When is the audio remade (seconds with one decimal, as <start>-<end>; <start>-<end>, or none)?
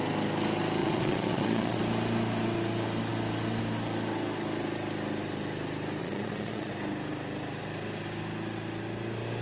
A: 0.8-1.8; 6.0-6.7